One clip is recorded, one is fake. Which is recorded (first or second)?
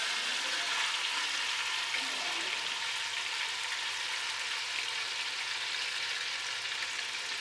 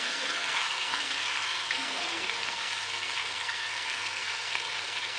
first